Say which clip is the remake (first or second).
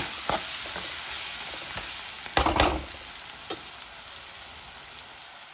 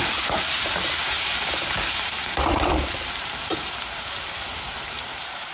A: second